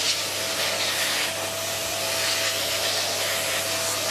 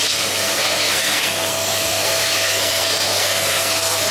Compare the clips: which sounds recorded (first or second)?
first